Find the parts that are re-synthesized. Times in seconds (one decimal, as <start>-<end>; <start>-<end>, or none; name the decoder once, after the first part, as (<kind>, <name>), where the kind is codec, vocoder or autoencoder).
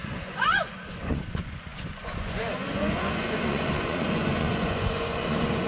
0.0-5.7 (vocoder, Vocos)